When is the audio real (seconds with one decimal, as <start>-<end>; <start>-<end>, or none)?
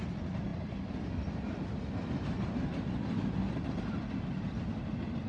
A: 0.0-5.3